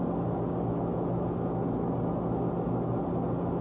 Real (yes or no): yes